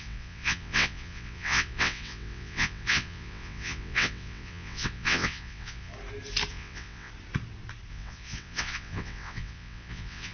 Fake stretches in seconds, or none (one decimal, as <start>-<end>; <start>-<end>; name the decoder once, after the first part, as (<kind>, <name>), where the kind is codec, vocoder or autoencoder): 0.0-5.9 (vocoder, WaveNeXt); 6.5-7.1; 7.9-10.3